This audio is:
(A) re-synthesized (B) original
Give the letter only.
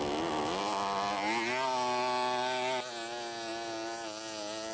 B